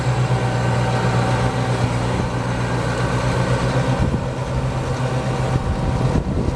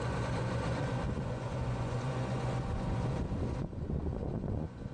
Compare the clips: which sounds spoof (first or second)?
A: second